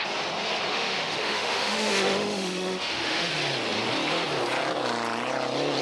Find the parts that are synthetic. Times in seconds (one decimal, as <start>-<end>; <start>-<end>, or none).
0.7-3.3